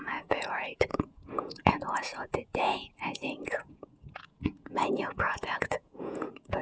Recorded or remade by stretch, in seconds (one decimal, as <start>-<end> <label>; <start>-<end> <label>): 0.0-6.6 remade